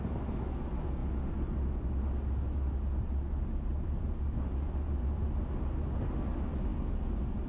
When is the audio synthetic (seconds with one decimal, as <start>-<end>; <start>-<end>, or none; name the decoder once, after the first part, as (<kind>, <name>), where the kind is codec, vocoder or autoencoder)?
none

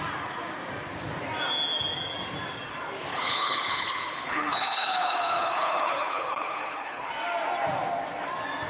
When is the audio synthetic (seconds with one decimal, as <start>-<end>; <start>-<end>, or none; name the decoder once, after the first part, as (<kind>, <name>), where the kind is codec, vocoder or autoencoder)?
3.1-7.1 (codec, HILCodec)

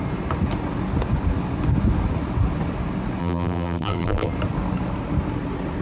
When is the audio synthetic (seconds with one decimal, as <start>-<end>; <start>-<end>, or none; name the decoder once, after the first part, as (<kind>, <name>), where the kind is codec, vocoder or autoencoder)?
3.2-4.3 (vocoder, BigVGAN v2)

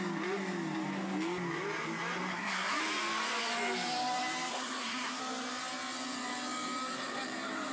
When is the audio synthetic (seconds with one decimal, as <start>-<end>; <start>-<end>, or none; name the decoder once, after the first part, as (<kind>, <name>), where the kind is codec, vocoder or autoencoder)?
2.3-2.8 (codec, SNAC); 4.5-5.2

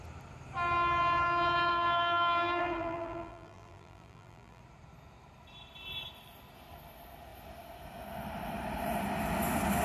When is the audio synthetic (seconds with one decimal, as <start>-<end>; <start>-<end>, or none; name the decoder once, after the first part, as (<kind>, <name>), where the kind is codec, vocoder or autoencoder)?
1.7-4.6 (vocoder, BigVGAN v2)

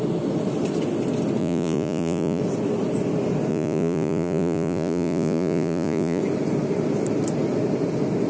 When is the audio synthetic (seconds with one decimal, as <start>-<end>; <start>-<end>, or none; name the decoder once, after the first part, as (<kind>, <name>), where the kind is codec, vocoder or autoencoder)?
1.4-2.4 (vocoder, Vocos); 3.5-6.2

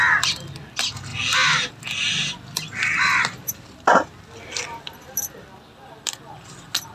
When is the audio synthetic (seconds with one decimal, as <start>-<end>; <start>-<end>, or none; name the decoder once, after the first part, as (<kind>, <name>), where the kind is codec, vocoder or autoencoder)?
none

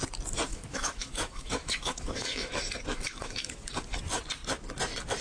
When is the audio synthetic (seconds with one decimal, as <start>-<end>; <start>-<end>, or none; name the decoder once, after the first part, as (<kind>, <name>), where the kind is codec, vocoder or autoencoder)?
0.5-2.5 (autoencoder, DAC-VAE); 2.9-3.6